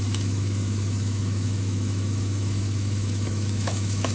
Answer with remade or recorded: remade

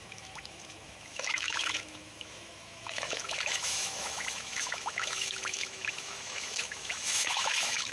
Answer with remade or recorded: remade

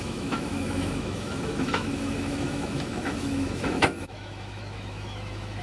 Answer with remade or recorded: remade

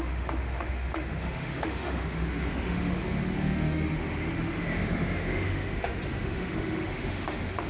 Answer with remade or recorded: remade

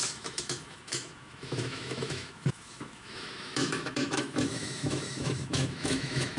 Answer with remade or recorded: remade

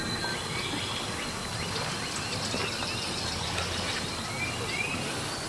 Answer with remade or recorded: recorded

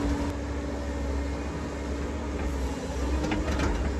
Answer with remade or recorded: recorded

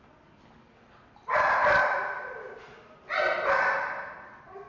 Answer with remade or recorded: recorded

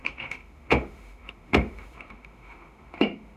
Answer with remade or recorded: remade